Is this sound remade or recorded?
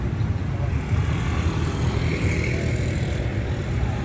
recorded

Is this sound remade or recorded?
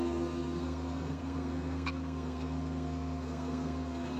remade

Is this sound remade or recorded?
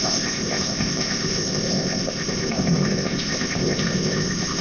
remade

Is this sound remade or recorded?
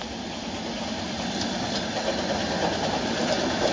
recorded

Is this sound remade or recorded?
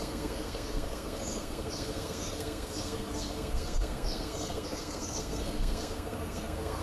remade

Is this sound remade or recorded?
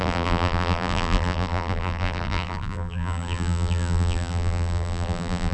remade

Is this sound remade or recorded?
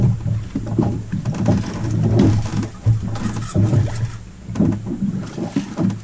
recorded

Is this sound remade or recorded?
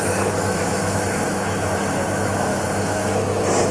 remade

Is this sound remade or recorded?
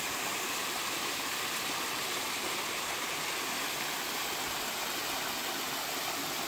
recorded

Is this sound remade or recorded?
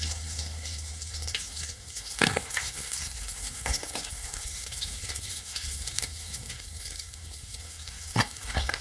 remade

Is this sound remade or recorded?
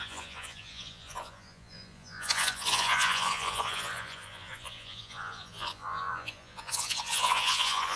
remade